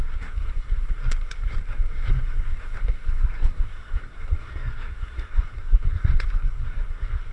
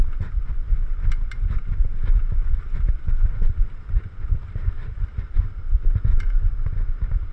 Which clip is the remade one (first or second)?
first